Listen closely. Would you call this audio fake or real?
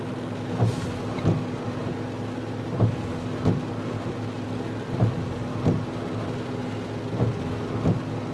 real